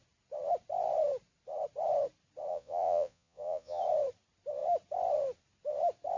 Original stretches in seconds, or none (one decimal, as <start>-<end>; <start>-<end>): 0.0-2.5; 3.8-6.2